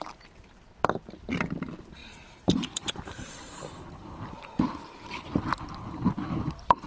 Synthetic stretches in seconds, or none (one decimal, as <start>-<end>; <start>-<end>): 2.0-3.3